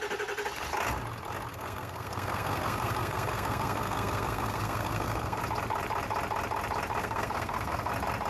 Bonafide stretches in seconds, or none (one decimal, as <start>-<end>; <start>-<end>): 0.0-1.5; 5.4-7.0; 7.9-8.3